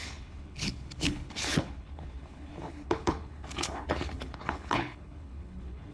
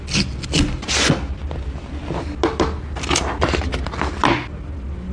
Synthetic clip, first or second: first